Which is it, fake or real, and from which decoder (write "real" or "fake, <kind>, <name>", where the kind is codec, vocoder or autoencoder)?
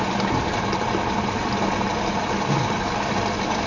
real